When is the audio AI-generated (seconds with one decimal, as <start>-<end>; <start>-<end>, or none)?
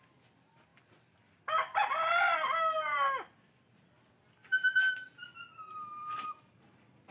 none